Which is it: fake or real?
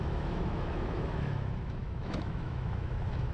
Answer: fake